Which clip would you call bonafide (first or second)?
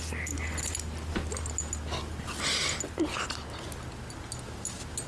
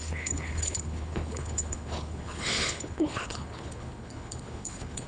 first